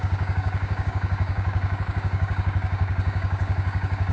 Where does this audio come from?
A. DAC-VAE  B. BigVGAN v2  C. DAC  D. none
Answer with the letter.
C